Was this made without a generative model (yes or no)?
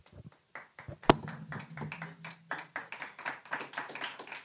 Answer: yes